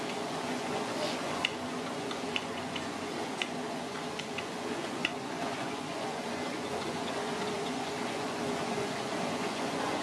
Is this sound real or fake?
fake